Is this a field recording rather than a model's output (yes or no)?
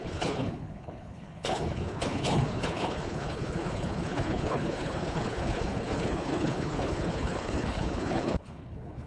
no